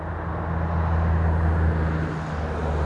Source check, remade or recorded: recorded